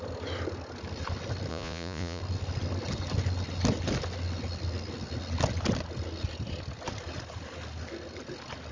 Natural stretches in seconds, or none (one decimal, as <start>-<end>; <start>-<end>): 0.0-1.5; 2.2-8.7